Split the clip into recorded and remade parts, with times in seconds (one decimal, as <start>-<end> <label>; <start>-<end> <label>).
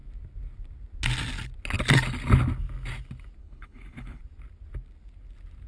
0.0-3.4 recorded; 3.4-4.2 remade; 4.2-5.7 recorded